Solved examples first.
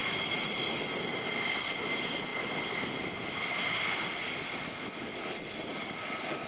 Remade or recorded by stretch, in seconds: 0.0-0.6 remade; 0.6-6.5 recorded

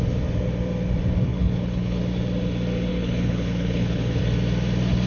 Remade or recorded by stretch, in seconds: 0.0-1.3 recorded; 1.3-2.0 remade; 2.0-2.9 recorded; 2.9-4.2 remade; 4.2-5.1 recorded

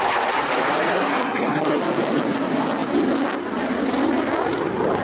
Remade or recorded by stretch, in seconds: 0.0-0.9 recorded; 0.9-1.8 remade; 1.8-5.0 recorded

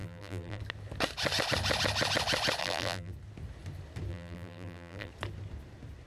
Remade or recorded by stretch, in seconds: 0.0-0.6 remade; 0.6-2.6 recorded; 2.6-3.1 remade; 3.1-4.1 recorded; 4.1-5.1 remade; 5.1-6.1 recorded

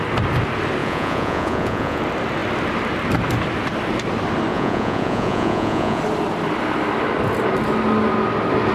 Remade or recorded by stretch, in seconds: 0.0-0.8 recorded; 0.8-2.0 remade; 2.0-4.5 recorded; 4.5-6.0 remade; 6.0-8.7 recorded